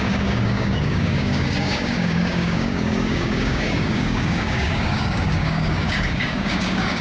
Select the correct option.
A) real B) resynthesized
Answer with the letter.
B